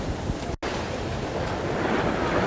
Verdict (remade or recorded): recorded